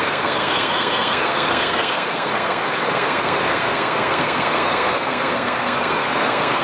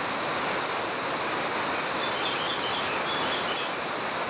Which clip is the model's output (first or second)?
first